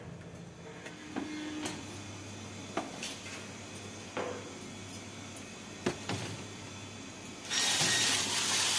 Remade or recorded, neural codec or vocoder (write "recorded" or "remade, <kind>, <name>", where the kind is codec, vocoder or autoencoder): recorded